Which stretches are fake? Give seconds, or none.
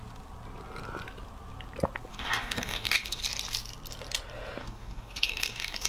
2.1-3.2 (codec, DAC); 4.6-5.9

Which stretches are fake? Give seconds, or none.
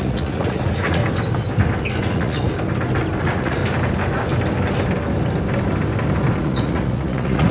0.0-1.0 (vocoder, Vocos); 2.0-2.4; 3.2-3.6; 6.4-7.5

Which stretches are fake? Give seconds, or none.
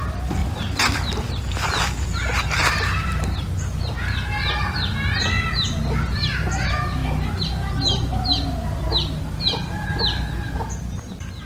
0.4-1.8 (vocoder, BigVGAN v2); 5.2-6.3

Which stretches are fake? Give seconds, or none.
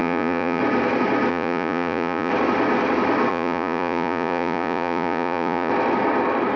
0.0-0.6 (vocoder, Vocos); 1.3-2.3; 3.3-5.7